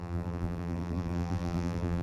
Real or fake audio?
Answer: fake